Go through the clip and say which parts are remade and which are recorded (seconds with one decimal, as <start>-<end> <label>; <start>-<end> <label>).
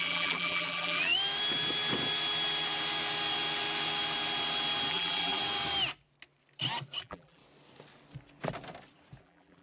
0.0-1.1 remade; 1.1-4.9 recorded; 4.9-5.4 remade; 5.4-7.0 recorded; 7.0-7.4 remade; 7.4-9.2 recorded; 9.2-9.6 remade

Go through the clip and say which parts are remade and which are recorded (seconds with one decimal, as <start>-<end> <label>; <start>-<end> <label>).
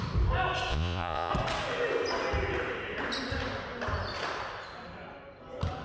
0.0-0.7 recorded; 0.7-1.3 remade; 1.3-5.8 recorded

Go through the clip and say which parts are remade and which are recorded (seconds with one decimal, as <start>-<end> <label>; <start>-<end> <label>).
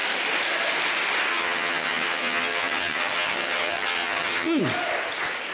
0.0-1.3 recorded; 1.3-4.6 remade; 4.6-5.5 recorded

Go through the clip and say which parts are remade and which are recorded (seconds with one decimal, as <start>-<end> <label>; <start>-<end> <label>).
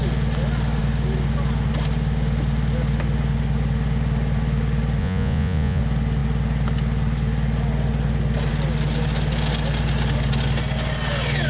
0.0-5.0 recorded; 5.0-5.8 remade; 5.8-11.5 recorded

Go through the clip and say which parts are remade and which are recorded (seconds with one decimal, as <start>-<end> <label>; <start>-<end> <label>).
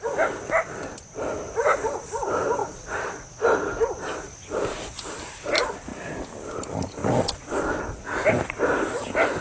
0.0-9.4 recorded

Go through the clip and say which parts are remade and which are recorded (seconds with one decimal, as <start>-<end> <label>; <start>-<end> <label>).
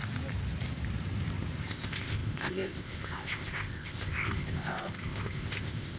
0.0-1.7 recorded; 1.7-6.0 remade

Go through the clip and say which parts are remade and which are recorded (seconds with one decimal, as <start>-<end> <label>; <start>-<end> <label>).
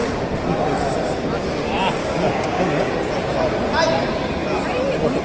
0.0-2.0 recorded; 2.0-2.9 remade; 2.9-5.2 recorded